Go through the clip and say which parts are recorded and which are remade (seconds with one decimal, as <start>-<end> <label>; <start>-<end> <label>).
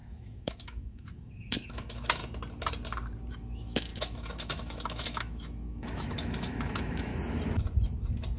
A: 0.0-2.2 remade; 2.2-3.3 recorded; 3.3-7.1 remade; 7.1-8.4 recorded